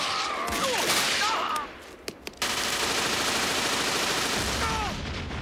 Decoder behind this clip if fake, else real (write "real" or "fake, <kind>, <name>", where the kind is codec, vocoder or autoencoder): real